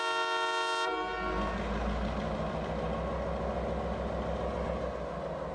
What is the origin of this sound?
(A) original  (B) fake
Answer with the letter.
A